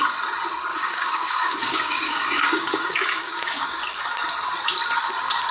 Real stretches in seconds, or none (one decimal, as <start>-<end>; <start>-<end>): 0.0-0.7; 3.8-5.5